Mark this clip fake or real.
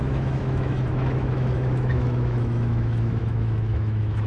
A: fake